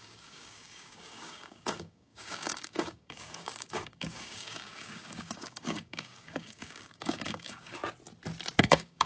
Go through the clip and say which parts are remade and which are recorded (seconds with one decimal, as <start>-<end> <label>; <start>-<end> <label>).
0.0-7.8 remade; 7.8-8.6 recorded; 8.6-9.1 remade